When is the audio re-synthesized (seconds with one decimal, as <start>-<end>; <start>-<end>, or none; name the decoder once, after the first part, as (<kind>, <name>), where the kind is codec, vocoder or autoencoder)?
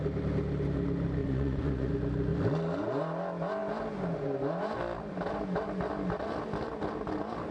1.2-1.9 (vocoder, Vocos)